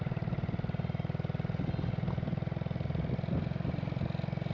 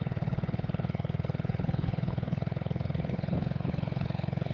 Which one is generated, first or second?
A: second